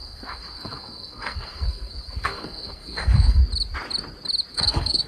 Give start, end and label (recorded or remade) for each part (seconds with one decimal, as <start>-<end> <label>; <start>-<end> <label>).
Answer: 0.0-3.4 remade; 3.4-4.5 recorded; 4.5-5.1 remade